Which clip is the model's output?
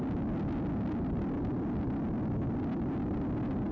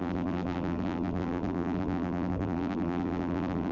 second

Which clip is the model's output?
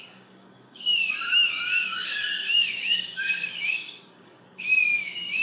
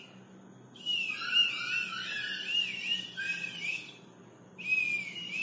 first